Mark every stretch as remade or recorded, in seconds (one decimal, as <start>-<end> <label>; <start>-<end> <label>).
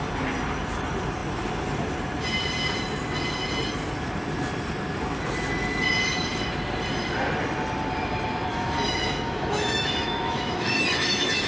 0.0-8.5 recorded; 8.5-11.5 remade